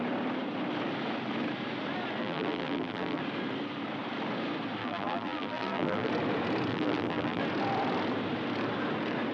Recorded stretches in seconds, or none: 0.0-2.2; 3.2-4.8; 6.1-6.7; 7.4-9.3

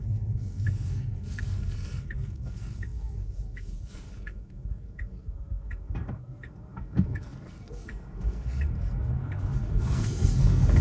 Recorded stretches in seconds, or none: none

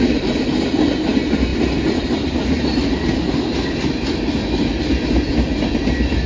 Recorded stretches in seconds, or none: 0.0-6.3

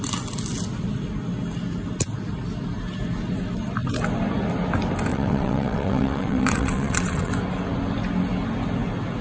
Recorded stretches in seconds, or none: 0.0-5.1; 7.3-9.2

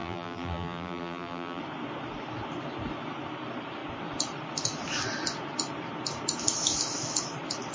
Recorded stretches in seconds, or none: 1.6-7.7

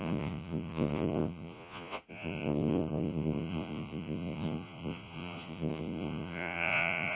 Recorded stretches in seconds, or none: none